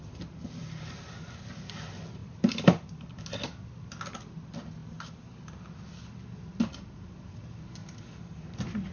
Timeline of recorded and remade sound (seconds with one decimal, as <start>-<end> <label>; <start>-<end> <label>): 0.0-8.9 recorded